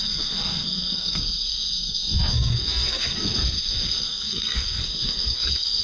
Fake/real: fake